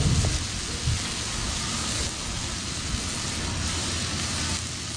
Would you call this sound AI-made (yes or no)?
no